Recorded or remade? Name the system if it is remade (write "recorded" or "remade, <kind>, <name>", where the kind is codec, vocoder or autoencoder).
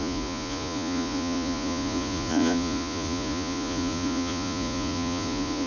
remade, vocoder, Vocos